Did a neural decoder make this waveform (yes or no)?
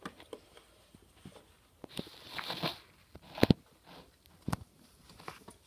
no